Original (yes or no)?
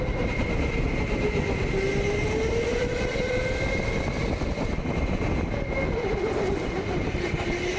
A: yes